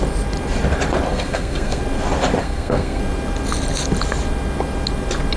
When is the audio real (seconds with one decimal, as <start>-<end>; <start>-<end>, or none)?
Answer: 0.0-1.1; 1.8-2.4; 3.0-5.4